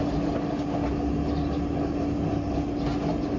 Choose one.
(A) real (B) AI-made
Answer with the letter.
A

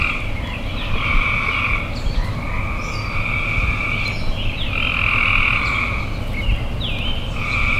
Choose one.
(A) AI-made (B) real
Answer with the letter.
B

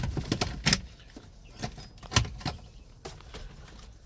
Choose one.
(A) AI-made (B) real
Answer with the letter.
B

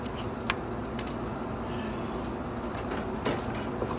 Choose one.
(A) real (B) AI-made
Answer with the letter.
A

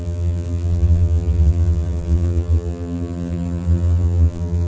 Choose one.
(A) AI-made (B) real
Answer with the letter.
A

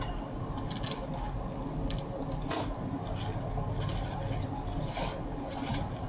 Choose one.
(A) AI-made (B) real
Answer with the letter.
B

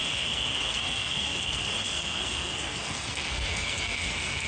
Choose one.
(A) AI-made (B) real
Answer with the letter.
A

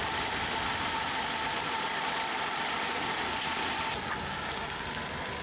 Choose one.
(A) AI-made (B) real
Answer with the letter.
B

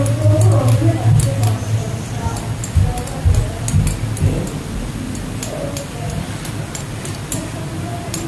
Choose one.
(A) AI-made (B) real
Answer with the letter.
B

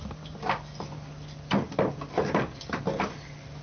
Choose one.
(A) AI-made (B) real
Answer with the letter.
B